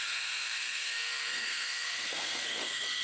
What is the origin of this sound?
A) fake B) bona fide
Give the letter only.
A